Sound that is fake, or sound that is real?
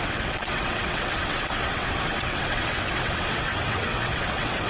fake